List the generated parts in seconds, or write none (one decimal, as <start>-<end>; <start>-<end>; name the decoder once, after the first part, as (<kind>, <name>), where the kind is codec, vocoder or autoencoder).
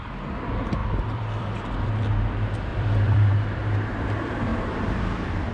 0.8-1.9 (vocoder, BigVGAN v2); 2.7-3.3; 4.5-5.5